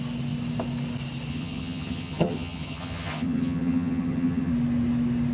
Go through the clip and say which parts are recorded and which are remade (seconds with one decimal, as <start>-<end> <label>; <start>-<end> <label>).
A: 0.0-1.3 recorded; 1.3-4.5 remade; 4.5-5.3 recorded